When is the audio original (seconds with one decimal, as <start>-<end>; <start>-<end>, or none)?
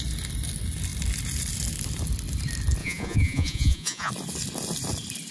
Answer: 0.0-2.8; 4.1-5.3